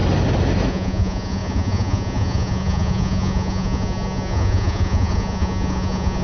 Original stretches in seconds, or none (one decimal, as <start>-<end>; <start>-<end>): 0.0-0.7